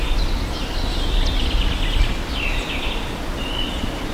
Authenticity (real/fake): real